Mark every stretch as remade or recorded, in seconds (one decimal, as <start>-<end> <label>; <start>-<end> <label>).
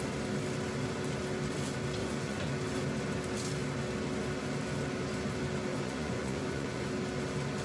0.0-2.0 recorded; 2.0-2.5 remade; 2.5-5.7 recorded; 5.7-6.9 remade; 6.9-7.6 recorded